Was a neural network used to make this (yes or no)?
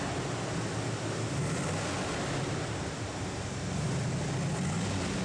no